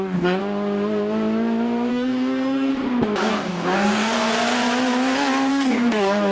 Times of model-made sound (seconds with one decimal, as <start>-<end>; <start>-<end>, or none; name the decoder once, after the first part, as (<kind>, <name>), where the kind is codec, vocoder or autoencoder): 0.0-0.4 (codec, DAC); 1.9-2.7; 3.3-4.3; 5.5-6.3